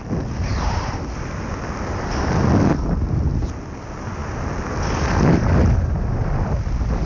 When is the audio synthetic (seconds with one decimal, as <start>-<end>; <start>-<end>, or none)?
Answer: 0.5-1.0